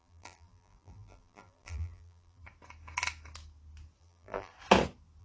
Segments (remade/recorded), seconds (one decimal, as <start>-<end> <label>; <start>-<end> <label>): 0.0-2.4 remade; 2.4-4.0 recorded; 4.0-4.5 remade; 4.5-5.2 recorded